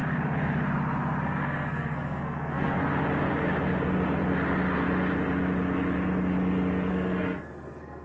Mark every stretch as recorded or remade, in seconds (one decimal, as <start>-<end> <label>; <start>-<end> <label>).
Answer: 0.0-1.2 recorded; 1.2-2.8 remade; 2.8-6.9 recorded; 6.9-8.0 remade